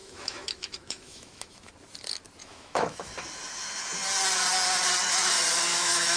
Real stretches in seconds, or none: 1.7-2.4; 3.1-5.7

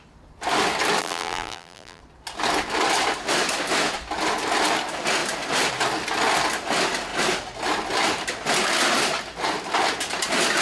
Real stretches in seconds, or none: 0.0-1.0; 2.0-10.6

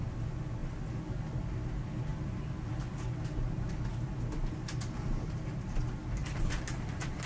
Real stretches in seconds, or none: 0.0-2.1; 2.9-6.2

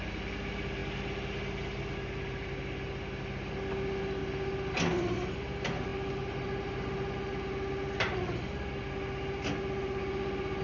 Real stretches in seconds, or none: 0.0-10.6

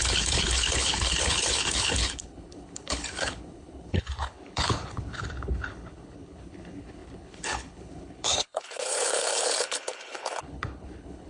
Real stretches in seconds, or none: none

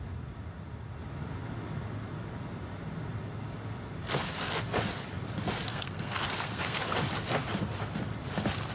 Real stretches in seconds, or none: 0.0-5.7; 6.8-8.7

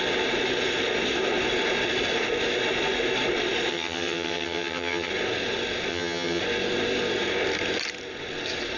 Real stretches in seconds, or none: 0.0-3.7; 5.1-5.9; 6.4-8.8